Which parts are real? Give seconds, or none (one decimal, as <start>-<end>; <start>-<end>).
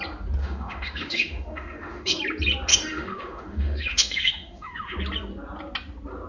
0.0-0.4; 2.2-2.7; 5.0-6.3